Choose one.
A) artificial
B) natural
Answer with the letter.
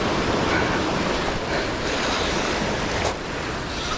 B